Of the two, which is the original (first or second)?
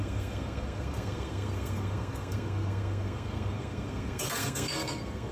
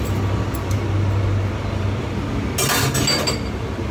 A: second